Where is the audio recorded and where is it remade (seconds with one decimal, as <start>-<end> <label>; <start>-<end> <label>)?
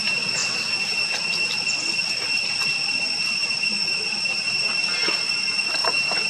0.0-3.4 recorded; 3.4-5.2 remade; 5.2-5.8 recorded; 5.8-6.3 remade